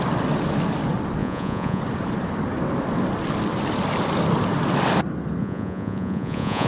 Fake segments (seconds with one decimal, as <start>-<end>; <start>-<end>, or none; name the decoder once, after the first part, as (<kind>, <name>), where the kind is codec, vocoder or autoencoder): 1.2-1.8 (vocoder, Vocos); 5.4-6.7